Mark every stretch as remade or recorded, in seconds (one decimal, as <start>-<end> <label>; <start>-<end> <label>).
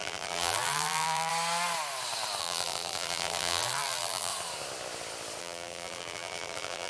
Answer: 0.0-1.3 remade; 1.3-2.4 recorded; 2.4-4.3 remade; 4.3-5.4 recorded; 5.4-6.9 remade